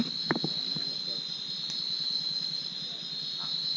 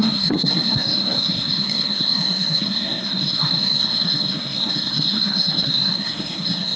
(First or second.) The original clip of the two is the first